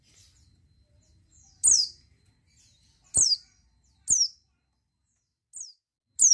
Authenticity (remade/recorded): recorded